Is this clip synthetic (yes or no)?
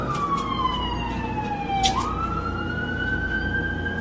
no